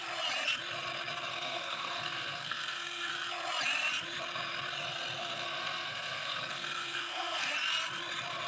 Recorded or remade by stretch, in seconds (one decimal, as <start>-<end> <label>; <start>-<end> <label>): 0.0-1.3 recorded; 1.3-3.1 remade; 3.1-5.2 recorded; 5.2-7.5 remade; 7.5-8.5 recorded